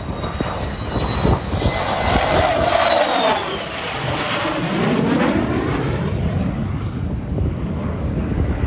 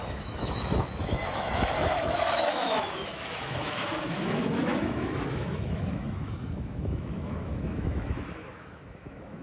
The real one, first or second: first